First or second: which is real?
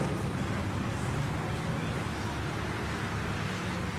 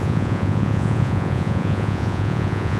first